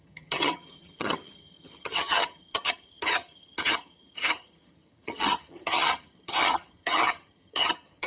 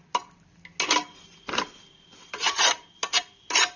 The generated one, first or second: first